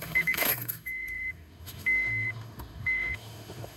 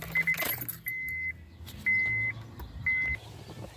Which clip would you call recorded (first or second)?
second